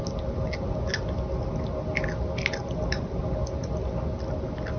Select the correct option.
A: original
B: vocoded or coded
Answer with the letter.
A